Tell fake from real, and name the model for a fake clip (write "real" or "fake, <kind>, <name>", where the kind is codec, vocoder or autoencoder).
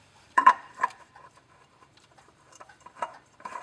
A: fake, vocoder, BigVGAN v2